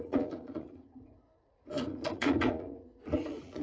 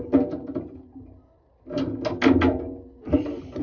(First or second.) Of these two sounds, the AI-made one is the first